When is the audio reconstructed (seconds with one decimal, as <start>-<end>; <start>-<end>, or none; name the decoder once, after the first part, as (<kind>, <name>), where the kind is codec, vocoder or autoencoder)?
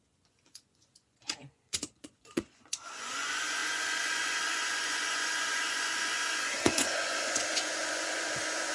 0.0-8.7 (vocoder, Vocos)